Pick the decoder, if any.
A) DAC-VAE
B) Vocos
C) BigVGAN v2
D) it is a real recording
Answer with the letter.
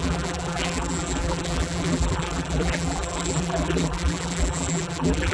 C